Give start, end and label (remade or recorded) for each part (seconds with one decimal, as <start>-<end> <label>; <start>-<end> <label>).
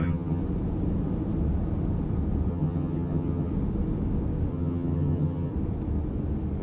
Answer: 0.0-0.4 remade; 0.4-2.5 recorded; 2.5-3.5 remade; 3.5-4.5 recorded; 4.5-5.5 remade; 5.5-6.6 recorded